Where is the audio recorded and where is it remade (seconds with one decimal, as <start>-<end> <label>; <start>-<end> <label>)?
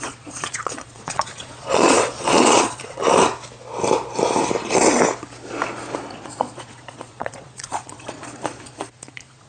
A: 0.0-3.0 remade; 3.0-6.1 recorded; 6.1-9.5 remade